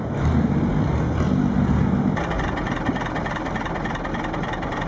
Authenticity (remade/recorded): recorded